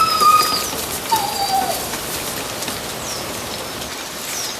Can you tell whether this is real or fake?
real